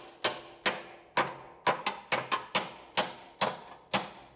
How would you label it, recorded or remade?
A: recorded